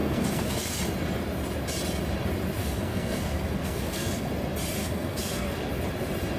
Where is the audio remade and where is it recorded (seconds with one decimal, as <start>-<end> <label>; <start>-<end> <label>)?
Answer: 0.0-0.8 remade; 0.8-2.6 recorded; 2.6-4.3 remade; 4.3-4.8 recorded; 4.8-5.7 remade; 5.7-6.4 recorded